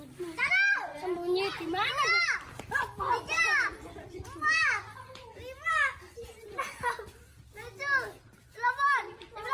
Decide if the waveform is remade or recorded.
recorded